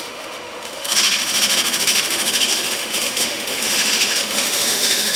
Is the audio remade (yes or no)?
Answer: yes